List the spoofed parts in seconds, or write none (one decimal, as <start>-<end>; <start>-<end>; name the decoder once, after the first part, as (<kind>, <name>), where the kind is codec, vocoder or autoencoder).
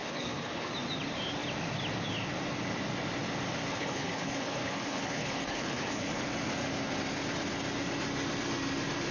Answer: 0.0-0.7 (codec, HILCodec); 3.7-6.2